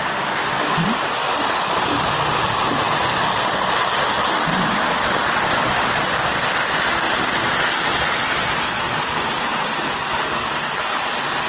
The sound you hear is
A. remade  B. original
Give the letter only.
B